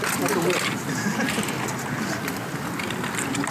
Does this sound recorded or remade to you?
recorded